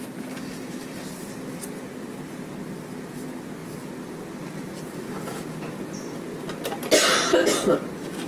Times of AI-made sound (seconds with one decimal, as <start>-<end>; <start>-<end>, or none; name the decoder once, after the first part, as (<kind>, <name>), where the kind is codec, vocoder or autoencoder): none